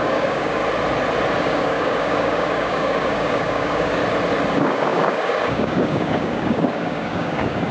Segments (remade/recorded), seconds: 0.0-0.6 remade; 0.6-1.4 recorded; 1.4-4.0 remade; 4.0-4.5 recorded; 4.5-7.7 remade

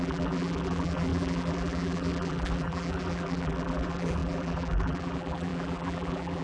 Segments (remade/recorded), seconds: 0.0-6.4 remade

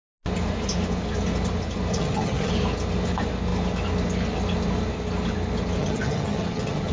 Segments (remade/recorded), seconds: 0.0-1.9 recorded; 1.9-2.5 remade; 2.5-5.8 recorded; 5.8-6.9 remade

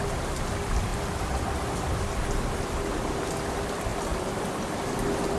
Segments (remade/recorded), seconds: 0.0-5.4 recorded

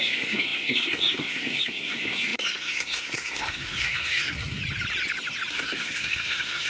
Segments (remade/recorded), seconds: 0.0-4.6 remade; 4.6-5.5 recorded; 5.5-6.7 remade

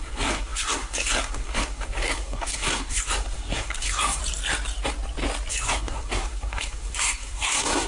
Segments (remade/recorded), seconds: 0.0-4.2 remade; 4.2-5.5 recorded; 5.5-7.9 remade

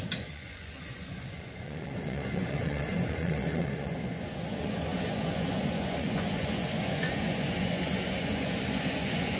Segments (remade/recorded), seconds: 0.0-9.4 remade

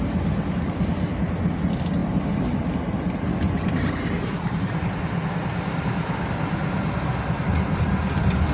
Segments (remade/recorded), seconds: 0.0-2.0 recorded; 2.0-2.5 remade; 2.5-8.5 recorded